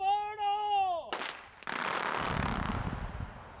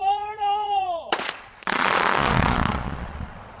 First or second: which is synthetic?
second